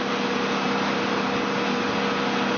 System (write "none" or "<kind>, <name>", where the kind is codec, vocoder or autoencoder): none